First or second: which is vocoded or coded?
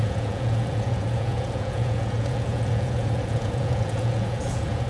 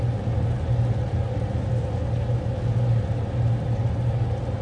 first